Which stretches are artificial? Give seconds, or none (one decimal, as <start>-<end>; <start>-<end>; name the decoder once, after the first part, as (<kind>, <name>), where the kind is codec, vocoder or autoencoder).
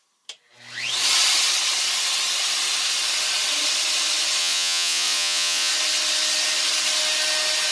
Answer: 4.4-5.7 (vocoder, Vocos)